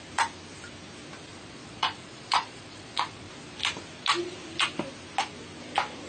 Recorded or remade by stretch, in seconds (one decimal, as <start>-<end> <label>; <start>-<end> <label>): 0.0-1.3 recorded; 1.3-3.3 remade; 3.3-6.1 recorded